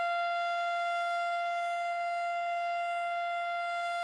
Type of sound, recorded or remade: recorded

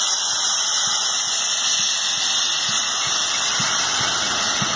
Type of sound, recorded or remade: recorded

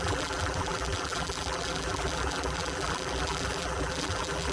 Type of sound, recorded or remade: remade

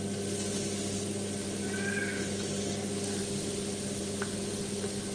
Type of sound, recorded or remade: recorded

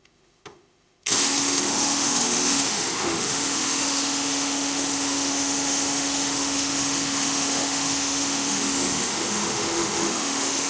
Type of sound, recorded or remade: remade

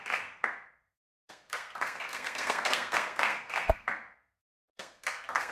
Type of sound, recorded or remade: remade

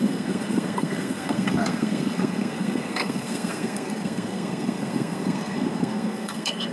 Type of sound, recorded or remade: remade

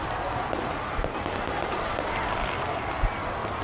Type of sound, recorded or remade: recorded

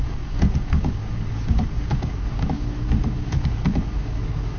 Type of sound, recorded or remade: remade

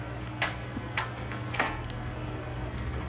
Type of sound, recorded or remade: remade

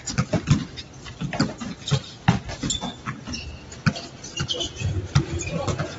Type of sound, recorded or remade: recorded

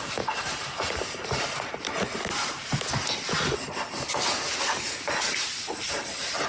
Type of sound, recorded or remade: remade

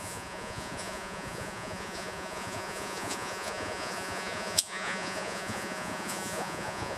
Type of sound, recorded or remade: remade